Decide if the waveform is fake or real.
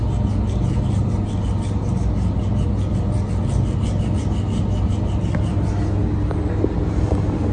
real